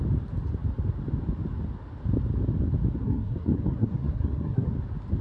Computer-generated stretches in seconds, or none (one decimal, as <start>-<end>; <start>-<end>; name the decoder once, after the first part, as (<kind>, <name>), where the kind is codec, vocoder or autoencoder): 3.0-4.7 (codec, SNAC)